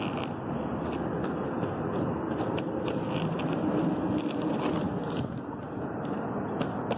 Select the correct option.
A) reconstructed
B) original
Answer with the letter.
B